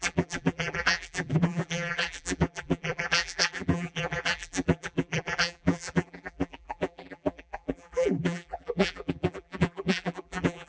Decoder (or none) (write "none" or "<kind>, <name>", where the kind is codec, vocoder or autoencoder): vocoder, BigVGAN v2